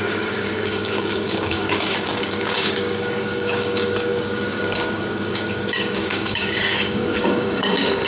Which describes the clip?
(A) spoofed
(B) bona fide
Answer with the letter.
A